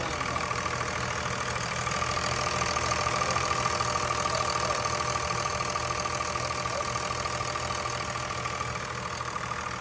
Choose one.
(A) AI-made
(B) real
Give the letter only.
B